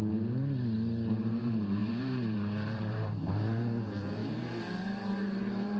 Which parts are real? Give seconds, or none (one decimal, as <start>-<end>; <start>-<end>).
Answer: 0.4-1.4